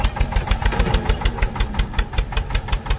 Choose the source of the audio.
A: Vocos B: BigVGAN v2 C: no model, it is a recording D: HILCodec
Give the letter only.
C